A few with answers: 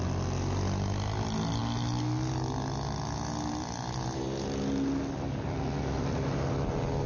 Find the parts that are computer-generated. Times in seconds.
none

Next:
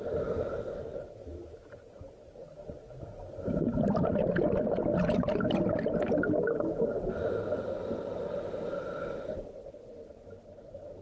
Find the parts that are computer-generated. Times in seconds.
none